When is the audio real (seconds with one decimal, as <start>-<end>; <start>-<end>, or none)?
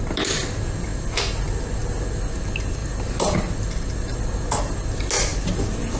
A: 0.0-6.0